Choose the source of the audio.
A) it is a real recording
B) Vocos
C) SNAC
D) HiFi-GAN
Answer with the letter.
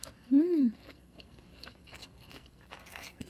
C